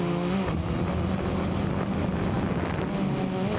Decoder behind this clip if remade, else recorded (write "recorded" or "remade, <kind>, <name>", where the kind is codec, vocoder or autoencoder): recorded